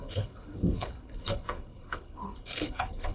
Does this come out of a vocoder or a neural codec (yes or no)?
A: yes